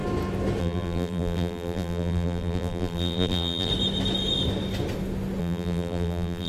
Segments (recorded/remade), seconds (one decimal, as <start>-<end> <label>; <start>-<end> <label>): 0.0-0.6 recorded; 0.6-3.7 remade; 3.7-5.4 recorded; 5.4-6.5 remade